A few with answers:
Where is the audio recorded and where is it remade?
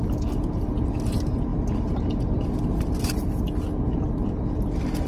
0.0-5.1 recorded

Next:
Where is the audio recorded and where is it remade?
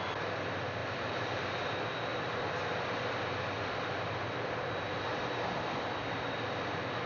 0.0-0.8 recorded; 0.8-1.4 remade; 1.4-7.1 recorded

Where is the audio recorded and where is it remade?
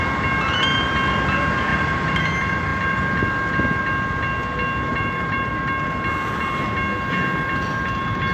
0.0-1.7 recorded; 1.7-2.2 remade; 2.2-4.9 recorded; 4.9-5.5 remade; 5.5-8.3 recorded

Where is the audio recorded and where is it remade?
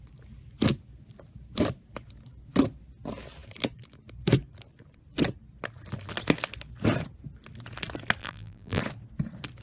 0.0-8.2 recorded; 8.2-8.8 remade; 8.8-9.6 recorded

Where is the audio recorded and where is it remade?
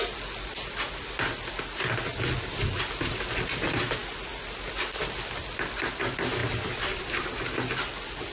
0.0-8.3 recorded